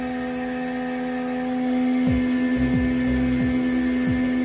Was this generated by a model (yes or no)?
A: no